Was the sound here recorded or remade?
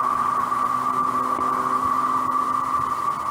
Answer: recorded